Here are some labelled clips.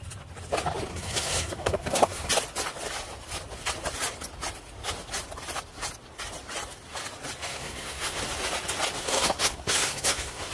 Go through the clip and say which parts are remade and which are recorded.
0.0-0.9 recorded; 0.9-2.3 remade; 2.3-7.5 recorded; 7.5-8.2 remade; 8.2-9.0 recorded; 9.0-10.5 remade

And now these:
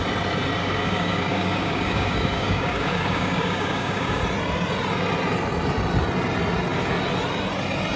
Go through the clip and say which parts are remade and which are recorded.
0.0-0.6 recorded; 0.6-4.2 remade; 4.2-8.0 recorded

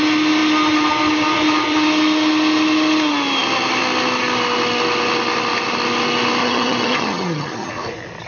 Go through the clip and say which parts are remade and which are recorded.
0.0-6.4 recorded; 6.4-7.7 remade; 7.7-8.3 recorded

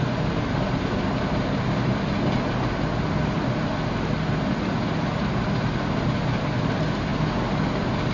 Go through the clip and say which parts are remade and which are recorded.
0.0-8.1 recorded

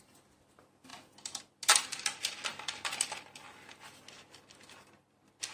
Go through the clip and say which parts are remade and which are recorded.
0.0-5.5 recorded

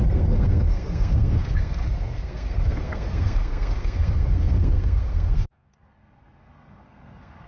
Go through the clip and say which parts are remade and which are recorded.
0.0-7.5 remade